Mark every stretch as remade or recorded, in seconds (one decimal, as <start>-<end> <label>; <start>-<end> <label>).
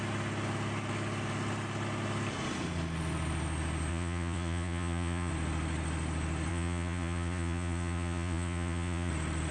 0.0-3.9 recorded; 3.9-5.3 remade; 5.3-6.5 recorded; 6.5-9.1 remade; 9.1-9.5 recorded